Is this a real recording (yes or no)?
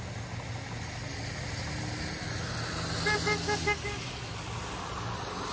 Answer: yes